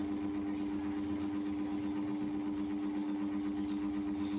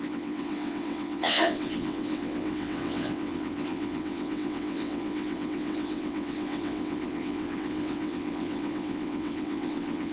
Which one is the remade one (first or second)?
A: second